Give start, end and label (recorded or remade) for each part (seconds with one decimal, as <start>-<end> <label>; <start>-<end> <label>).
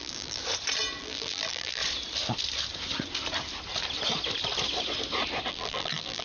0.0-0.4 remade; 0.4-1.0 recorded; 1.0-1.8 remade; 1.8-5.5 recorded; 5.5-6.2 remade